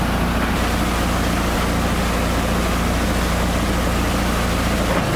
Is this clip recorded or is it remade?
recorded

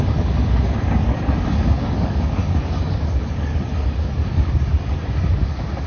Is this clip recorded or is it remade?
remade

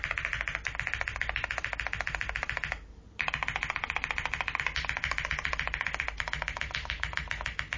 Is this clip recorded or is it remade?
recorded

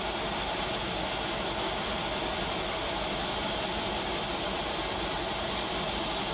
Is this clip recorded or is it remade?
recorded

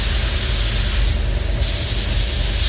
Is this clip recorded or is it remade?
recorded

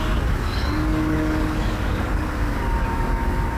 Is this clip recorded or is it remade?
remade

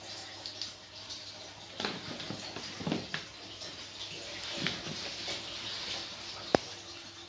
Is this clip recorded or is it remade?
recorded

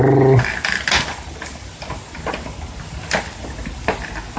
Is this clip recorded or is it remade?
recorded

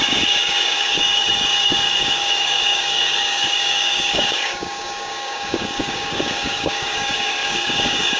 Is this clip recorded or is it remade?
remade